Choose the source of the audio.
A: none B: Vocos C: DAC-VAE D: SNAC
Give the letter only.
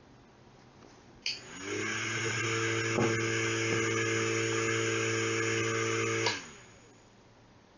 A